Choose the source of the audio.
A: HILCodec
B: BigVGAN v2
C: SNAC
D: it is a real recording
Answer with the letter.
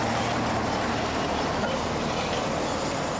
D